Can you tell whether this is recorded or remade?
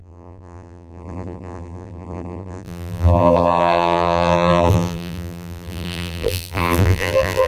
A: remade